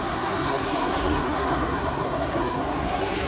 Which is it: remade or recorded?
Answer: remade